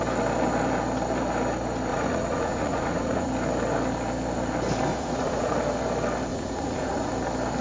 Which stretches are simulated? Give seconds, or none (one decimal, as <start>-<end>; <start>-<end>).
1.9-3.3; 4.9-5.5; 6.3-7.1